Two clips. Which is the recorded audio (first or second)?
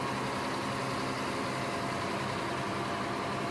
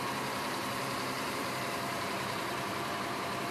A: first